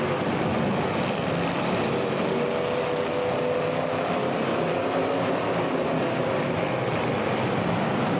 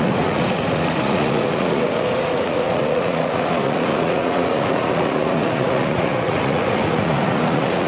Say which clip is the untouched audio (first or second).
first